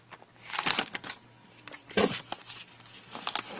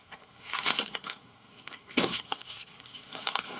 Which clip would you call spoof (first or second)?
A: second